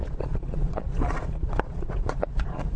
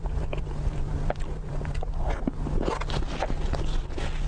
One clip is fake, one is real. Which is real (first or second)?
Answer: second